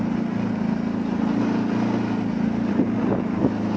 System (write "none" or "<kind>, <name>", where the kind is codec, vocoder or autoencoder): none